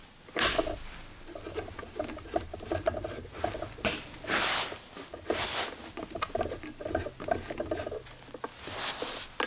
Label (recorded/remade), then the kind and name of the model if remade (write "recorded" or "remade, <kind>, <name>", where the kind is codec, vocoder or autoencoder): recorded